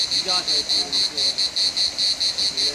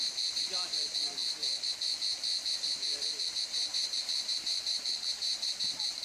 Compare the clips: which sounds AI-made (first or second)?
second